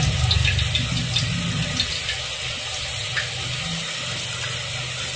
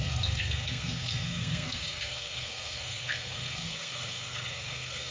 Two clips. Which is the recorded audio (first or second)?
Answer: first